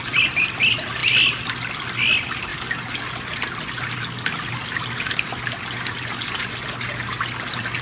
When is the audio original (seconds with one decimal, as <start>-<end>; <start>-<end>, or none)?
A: 0.0-7.8